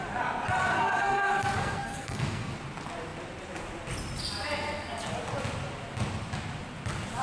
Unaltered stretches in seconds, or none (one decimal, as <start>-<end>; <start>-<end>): 0.0-0.7; 2.5-7.2

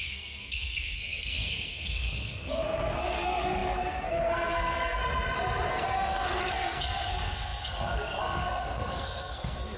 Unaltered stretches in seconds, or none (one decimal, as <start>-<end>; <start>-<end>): 5.0-5.7

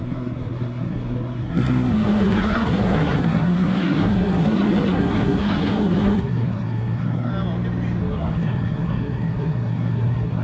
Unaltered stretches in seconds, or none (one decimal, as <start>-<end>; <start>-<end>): 7.3-8.0